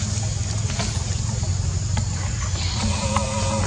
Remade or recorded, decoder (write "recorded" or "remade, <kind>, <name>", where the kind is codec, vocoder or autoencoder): recorded